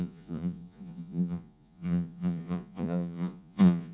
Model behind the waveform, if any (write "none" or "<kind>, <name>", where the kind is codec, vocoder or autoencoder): vocoder, Vocos